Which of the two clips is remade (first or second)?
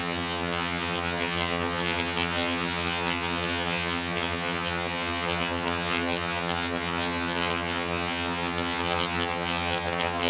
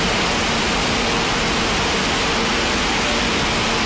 first